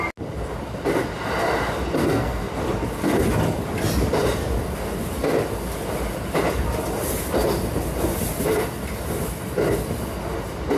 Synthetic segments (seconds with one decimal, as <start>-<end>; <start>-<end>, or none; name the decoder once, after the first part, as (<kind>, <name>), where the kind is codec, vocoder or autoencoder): 2.0-2.5 (codec, SNAC)